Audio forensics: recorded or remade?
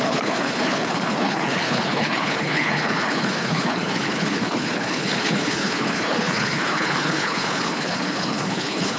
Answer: remade